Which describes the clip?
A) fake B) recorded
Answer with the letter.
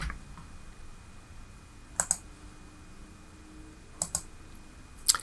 B